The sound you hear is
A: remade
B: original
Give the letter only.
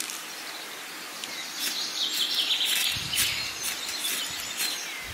B